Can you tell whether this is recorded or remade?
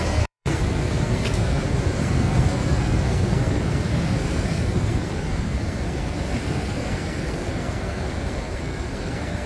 remade